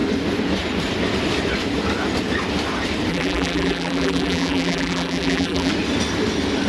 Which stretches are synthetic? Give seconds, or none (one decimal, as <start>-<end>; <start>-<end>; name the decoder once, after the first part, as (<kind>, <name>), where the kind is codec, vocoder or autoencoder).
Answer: 3.1-5.7 (vocoder, BigVGAN v2)